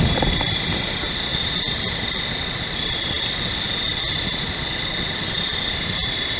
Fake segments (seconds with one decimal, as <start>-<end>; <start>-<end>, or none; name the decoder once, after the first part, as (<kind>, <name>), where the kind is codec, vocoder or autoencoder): none